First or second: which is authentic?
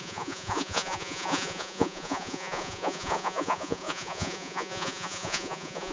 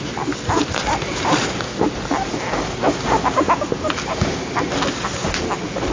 second